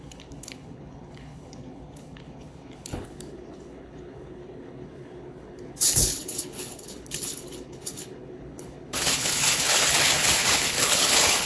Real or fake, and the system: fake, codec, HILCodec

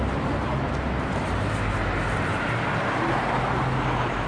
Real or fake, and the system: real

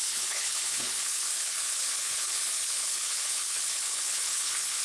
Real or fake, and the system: fake, codec, HILCodec